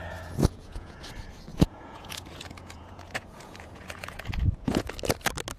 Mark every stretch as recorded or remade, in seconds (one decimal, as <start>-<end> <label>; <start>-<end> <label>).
0.0-0.4 recorded; 0.4-1.1 remade; 1.1-1.5 recorded; 1.5-4.9 remade; 4.9-5.6 recorded